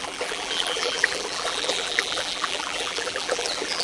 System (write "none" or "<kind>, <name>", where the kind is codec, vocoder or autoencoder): vocoder, BigVGAN v2